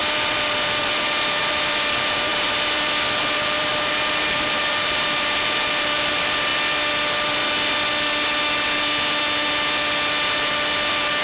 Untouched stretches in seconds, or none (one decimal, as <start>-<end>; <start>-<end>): 6.5-11.2